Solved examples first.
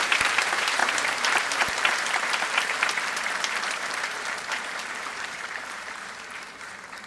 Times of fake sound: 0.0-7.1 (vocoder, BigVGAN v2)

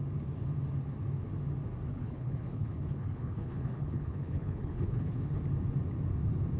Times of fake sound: 1.9-5.4 (codec, HILCodec)

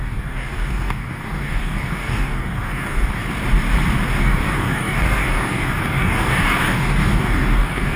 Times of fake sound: 0.0-3.2 (codec, DAC); 4.2-8.0

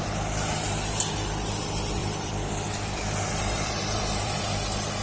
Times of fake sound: 2.0-4.4 (vocoder, BigVGAN v2)

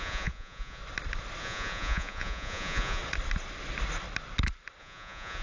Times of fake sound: 0.0-0.8 (vocoder, Vocos); 1.4-3.0; 4.8-5.4

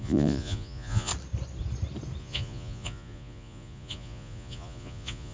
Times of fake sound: 0.0-1.1 (vocoder, Vocos); 2.2-5.3